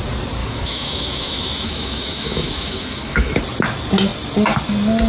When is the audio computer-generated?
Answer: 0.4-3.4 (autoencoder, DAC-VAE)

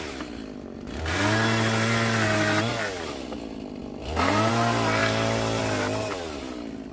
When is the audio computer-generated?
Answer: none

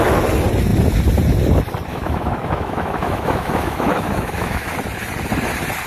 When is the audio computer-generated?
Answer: 1.9-4.7 (autoencoder, DAC-VAE)

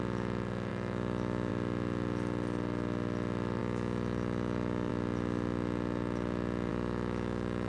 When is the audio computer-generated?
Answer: 0.7-1.5 (autoencoder, DAC-VAE); 3.6-4.9; 6.7-7.7

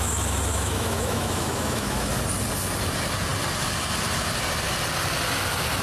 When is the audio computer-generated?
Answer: 0.5-2.1 (autoencoder, DAC-VAE)

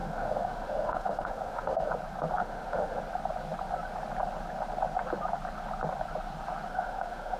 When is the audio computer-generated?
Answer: 0.0-1.9 (autoencoder, DAC-VAE); 2.4-3.0; 6.7-7.4

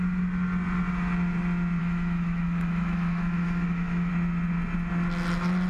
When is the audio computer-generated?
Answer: 1.8-4.1 (autoencoder, DAC-VAE)